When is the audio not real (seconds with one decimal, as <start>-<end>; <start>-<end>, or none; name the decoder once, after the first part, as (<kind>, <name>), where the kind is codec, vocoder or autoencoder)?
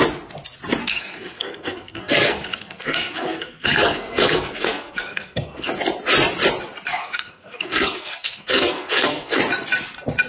0.8-5.7 (codec, SNAC); 7.0-9.4